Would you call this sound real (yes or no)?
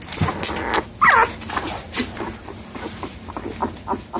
yes